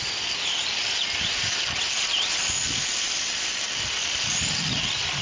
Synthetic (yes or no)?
no